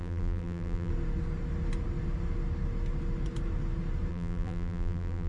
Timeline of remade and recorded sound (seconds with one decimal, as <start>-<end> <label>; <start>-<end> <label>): 0.0-0.9 remade; 0.9-4.1 recorded; 4.1-5.3 remade